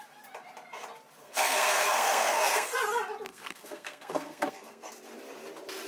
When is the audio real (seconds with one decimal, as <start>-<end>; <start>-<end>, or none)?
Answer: 0.0-1.2; 2.8-3.3; 4.9-5.9

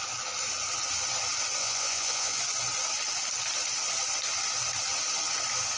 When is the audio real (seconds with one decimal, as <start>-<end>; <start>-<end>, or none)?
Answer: 0.0-1.6; 2.4-5.8

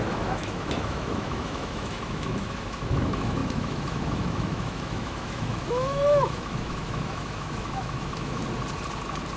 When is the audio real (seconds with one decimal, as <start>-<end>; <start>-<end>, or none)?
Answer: 8.4-9.4

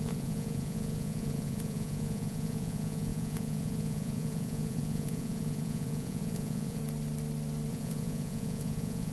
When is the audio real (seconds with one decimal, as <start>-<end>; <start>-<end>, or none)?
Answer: 6.8-7.7

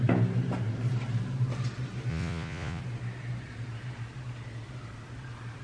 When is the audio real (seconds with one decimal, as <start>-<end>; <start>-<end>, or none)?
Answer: 0.0-2.1; 2.8-5.6

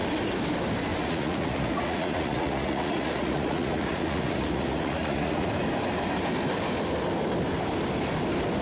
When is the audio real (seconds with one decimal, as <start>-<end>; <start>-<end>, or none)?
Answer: 0.0-1.0; 5.5-8.6

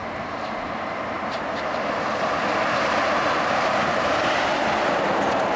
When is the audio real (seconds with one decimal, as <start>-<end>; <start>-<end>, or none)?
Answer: none